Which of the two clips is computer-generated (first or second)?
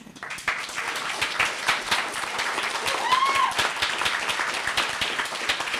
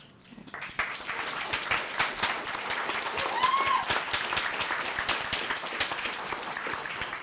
second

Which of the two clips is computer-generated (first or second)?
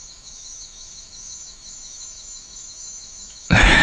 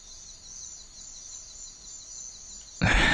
first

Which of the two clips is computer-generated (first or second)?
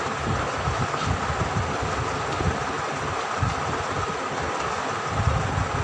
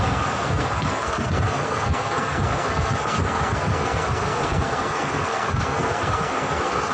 second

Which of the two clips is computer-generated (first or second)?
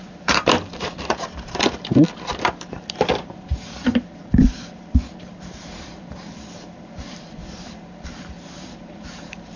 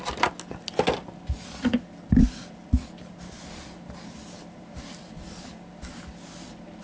first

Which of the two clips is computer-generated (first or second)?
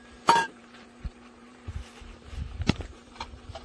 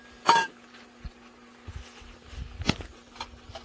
first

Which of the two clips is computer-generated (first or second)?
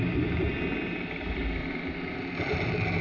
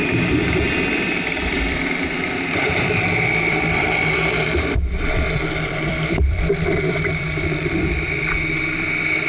second